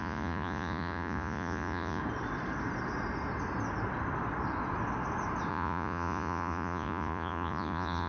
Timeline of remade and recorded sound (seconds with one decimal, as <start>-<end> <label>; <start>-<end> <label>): 0.0-2.0 remade; 2.0-5.5 recorded; 5.5-8.1 remade